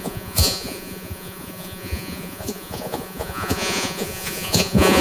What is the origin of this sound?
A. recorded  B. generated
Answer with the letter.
B